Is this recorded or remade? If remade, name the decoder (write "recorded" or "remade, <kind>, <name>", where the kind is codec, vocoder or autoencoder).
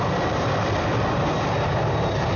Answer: recorded